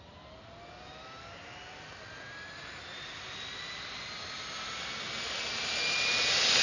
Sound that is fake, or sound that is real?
real